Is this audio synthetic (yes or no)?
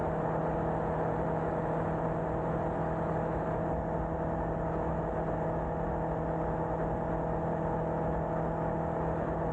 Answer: no